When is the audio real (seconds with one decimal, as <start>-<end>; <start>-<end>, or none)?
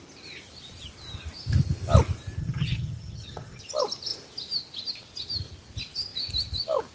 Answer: 0.0-2.4; 3.6-6.9